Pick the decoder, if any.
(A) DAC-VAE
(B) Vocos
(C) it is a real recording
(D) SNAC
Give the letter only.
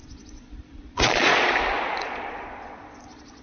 B